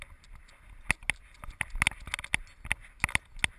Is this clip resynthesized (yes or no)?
no